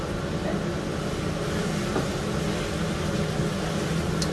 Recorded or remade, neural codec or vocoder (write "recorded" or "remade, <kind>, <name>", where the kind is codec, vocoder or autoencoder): recorded